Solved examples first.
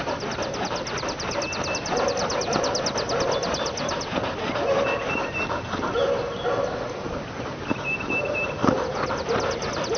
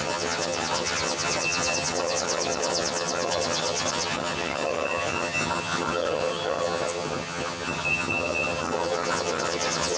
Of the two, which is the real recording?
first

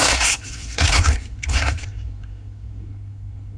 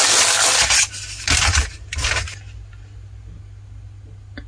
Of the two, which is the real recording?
second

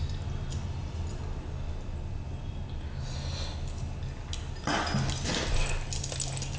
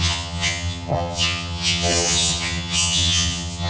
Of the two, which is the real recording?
first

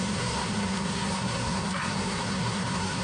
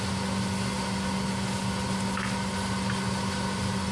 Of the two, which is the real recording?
second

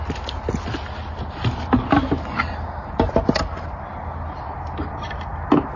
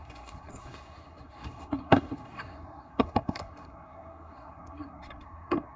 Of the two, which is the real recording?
first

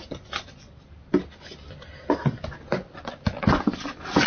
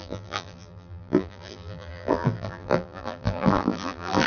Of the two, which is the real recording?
first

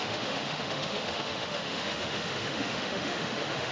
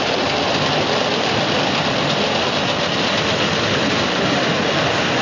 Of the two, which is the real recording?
second